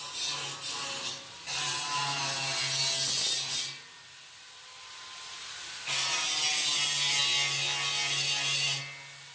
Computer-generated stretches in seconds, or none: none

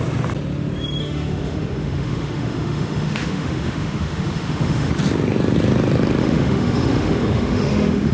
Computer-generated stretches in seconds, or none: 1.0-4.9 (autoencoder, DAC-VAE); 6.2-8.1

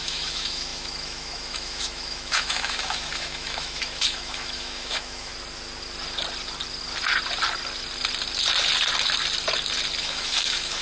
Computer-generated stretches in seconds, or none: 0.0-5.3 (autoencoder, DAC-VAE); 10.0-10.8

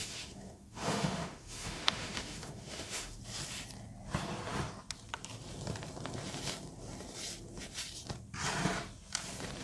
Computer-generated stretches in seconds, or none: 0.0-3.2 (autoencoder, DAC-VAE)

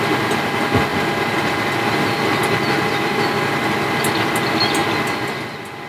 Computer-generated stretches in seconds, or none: none